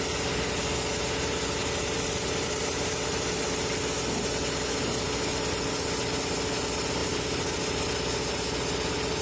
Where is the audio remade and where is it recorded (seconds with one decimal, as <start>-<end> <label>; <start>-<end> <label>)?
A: 0.0-1.6 recorded; 1.6-3.4 remade; 3.4-7.0 recorded; 7.0-7.6 remade; 7.6-9.2 recorded